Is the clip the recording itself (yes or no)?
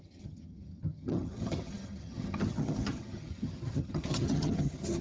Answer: no